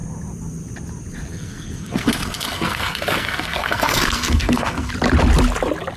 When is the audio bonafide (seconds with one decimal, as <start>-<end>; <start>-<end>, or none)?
0.0-1.3; 4.9-6.0